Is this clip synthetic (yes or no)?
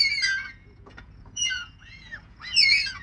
yes